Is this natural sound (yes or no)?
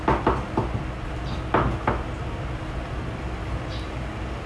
yes